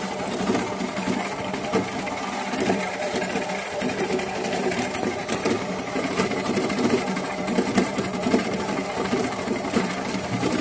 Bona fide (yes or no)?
no